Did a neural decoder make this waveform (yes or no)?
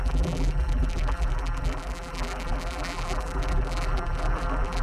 yes